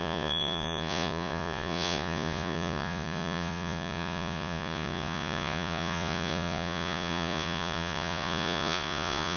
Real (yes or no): no